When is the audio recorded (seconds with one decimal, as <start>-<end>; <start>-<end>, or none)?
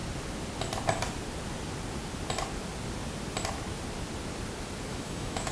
0.0-4.9